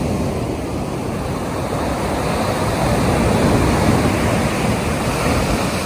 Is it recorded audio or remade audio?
recorded